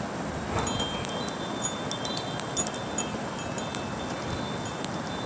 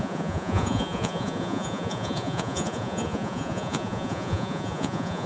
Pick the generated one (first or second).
second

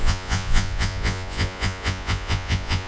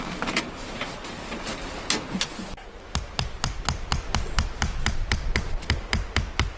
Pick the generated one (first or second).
first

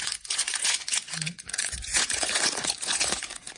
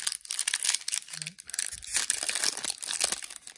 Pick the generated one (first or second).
first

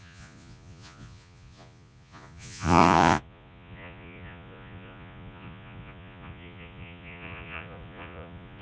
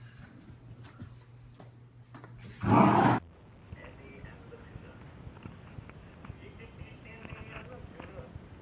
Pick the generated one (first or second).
first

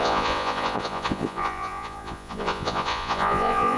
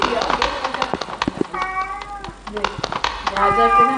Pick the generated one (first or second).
first